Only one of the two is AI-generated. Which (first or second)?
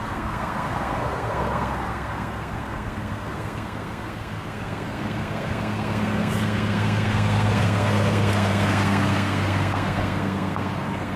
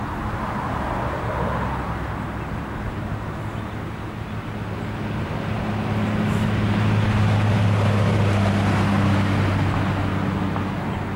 first